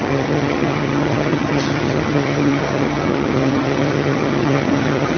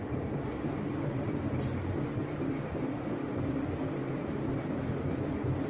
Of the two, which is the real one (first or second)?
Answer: second